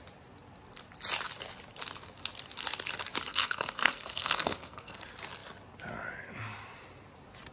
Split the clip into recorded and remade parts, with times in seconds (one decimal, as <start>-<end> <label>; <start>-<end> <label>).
0.0-3.3 recorded; 3.3-5.0 remade; 5.0-7.5 recorded